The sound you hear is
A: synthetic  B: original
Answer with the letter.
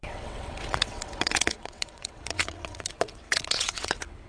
A